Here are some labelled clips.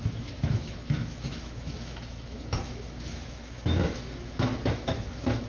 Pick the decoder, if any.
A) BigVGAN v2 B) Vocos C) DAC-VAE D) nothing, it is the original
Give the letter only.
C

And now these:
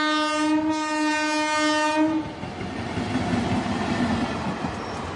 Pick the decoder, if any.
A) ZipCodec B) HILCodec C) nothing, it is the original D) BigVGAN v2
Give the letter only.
C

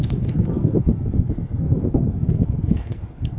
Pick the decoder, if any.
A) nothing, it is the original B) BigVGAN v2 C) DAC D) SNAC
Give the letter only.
D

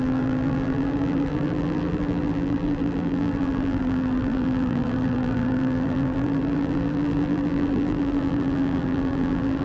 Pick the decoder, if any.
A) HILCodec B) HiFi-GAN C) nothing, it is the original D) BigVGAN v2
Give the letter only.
D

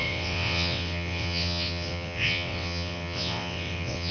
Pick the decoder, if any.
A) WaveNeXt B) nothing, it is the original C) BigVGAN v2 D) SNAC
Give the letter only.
A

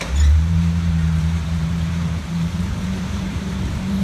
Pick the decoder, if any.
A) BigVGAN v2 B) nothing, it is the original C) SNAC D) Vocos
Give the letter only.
A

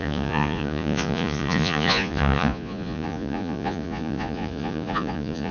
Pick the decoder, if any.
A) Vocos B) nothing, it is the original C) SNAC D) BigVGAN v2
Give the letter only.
A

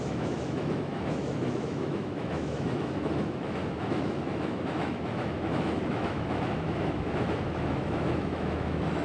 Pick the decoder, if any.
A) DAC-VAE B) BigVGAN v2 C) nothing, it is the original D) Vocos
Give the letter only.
A